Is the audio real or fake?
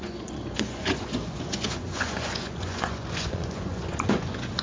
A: fake